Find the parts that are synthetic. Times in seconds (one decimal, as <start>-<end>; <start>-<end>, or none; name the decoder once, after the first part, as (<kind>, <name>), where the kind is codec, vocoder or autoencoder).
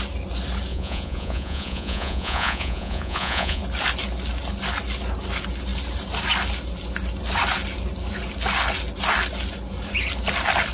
0.7-3.6 (vocoder, Vocos)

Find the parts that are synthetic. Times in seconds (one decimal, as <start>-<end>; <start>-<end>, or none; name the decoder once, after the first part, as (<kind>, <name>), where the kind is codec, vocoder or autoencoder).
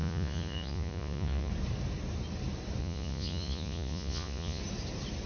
0.0-1.5 (vocoder, Vocos); 2.8-4.6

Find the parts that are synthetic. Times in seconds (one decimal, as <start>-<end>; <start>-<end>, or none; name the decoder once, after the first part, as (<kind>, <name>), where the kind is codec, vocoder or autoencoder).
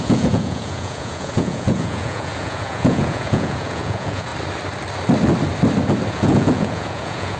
0.0-4.3 (vocoder, Vocos); 6.1-7.4